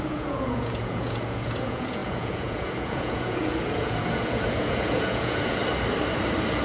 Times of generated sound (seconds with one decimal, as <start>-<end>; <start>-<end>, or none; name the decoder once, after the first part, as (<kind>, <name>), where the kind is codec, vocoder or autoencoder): 0.0-5.6 (vocoder, Vocos)